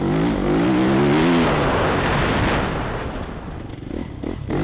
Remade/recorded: recorded